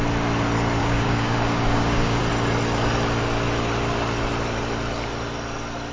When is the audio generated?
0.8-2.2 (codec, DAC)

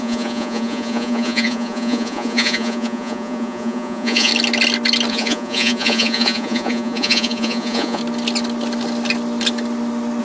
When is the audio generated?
0.0-4.3 (vocoder, Vocos); 5.1-8.0

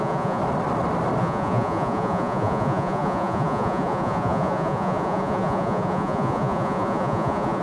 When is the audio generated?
0.0-0.4 (vocoder, Vocos); 1.2-7.6

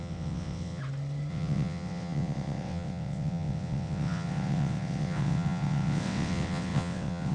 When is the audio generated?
0.0-0.8 (vocoder, WaveNeXt); 1.3-7.3